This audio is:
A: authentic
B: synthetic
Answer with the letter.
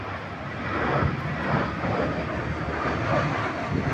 A